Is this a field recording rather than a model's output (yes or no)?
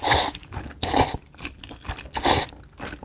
yes